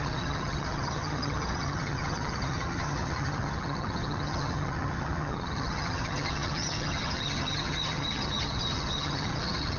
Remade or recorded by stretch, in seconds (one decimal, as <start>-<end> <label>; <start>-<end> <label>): 0.0-9.8 remade